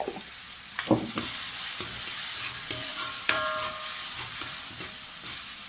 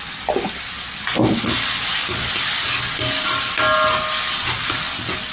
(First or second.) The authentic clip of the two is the second